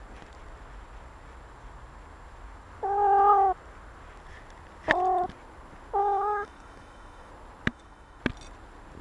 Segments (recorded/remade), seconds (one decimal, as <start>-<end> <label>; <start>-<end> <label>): 0.0-6.0 recorded; 6.0-7.3 remade; 7.3-7.7 recorded; 7.7-8.2 remade; 8.2-9.0 recorded